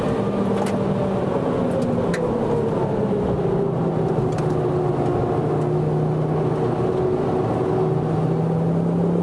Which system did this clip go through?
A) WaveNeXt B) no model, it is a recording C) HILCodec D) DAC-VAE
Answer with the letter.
B